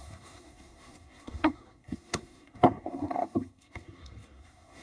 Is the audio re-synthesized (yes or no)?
yes